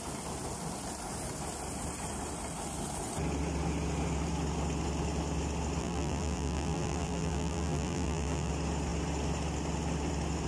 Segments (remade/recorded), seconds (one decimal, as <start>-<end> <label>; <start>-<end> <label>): 0.0-5.8 recorded; 5.8-8.5 remade; 8.5-10.5 recorded